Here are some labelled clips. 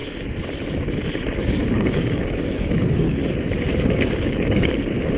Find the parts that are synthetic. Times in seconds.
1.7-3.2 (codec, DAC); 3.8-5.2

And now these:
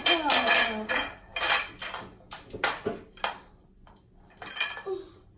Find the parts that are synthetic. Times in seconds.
none

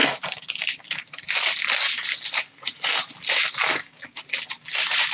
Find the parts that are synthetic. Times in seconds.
3.7-4.2 (codec, DAC)

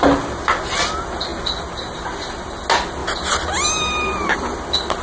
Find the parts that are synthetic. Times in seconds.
none

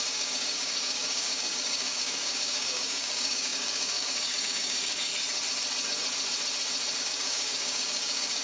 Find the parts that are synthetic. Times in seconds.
0.0-5.1 (codec, DAC); 7.0-8.4